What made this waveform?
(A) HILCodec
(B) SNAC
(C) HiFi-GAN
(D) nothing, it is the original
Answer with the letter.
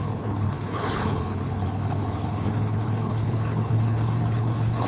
A